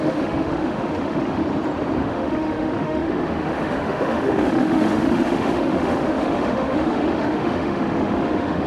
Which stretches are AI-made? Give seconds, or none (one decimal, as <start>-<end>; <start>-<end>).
0.0-1.4; 2.0-8.7